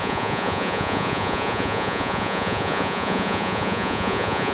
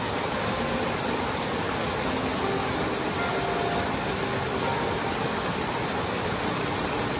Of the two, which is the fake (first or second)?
first